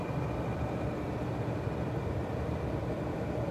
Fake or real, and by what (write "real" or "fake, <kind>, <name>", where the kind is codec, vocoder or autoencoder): fake, vocoder, BigVGAN v2